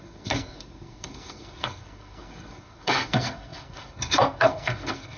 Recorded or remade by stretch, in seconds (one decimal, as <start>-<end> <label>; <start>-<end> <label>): 0.0-5.2 remade